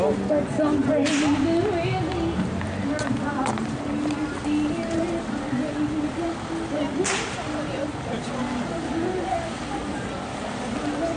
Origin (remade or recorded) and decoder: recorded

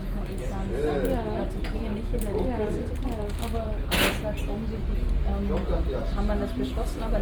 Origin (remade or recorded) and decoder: recorded